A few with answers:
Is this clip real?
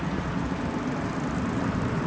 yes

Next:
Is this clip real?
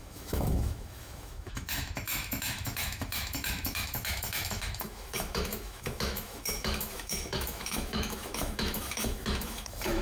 no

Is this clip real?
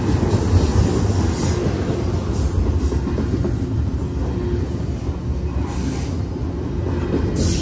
yes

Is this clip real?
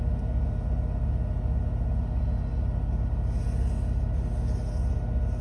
yes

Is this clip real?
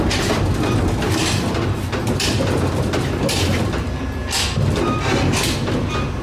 yes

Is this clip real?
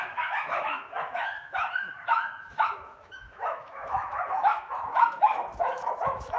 no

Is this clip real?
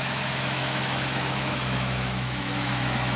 no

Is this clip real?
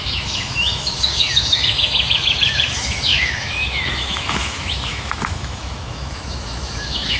no